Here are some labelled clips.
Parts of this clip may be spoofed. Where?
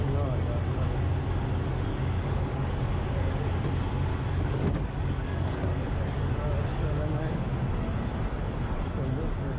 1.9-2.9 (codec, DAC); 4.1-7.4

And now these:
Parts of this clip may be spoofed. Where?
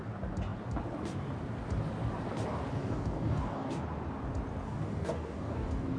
2.8-3.8 (codec, DAC); 4.6-6.0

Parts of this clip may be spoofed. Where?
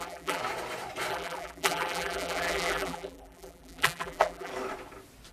0.0-0.4 (vocoder, BigVGAN v2); 1.1-4.5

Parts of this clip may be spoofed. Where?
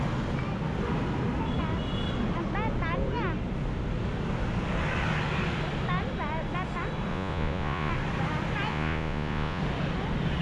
7.1-7.9 (vocoder, Vocos); 8.7-9.6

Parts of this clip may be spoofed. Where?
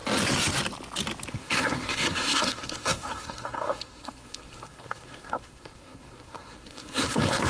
1.3-7.5 (codec, SNAC)